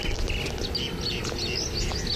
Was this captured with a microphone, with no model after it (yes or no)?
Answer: yes